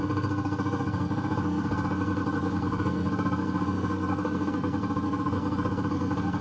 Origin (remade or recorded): remade